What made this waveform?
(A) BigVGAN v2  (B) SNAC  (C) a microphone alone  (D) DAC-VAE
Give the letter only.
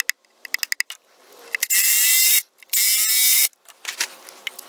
C